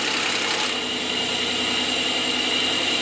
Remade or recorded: recorded